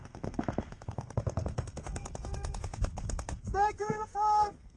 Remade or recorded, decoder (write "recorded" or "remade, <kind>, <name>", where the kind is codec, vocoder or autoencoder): remade, codec, SNAC